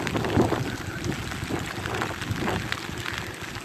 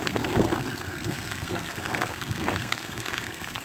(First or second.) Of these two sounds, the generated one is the second